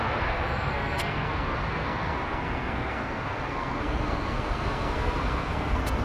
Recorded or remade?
remade